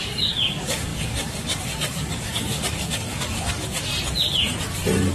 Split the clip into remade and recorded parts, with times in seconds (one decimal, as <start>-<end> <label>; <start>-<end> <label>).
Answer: 0.0-3.9 remade; 3.9-5.1 recorded